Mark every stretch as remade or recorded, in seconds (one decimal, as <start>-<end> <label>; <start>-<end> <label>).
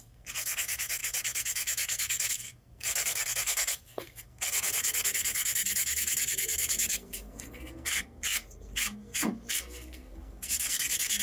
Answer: 0.0-11.2 remade